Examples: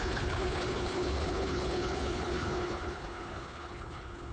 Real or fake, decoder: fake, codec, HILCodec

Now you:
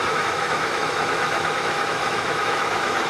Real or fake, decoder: fake, autoencoder, DAC-VAE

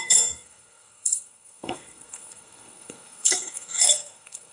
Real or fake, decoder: fake, codec, SNAC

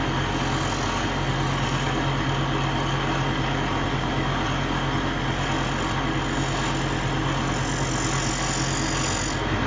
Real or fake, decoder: real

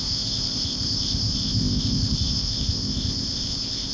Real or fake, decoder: fake, codec, ZipCodec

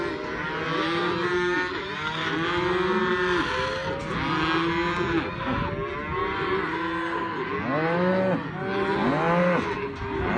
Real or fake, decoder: real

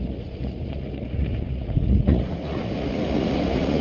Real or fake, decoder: fake, vocoder, Vocos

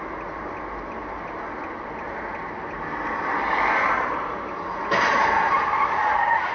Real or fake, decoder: real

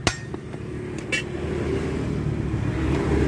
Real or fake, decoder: real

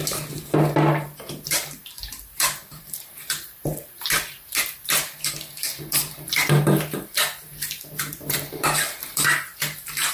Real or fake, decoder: fake, vocoder, BigVGAN v2